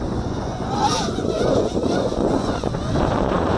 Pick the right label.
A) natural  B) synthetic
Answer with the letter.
B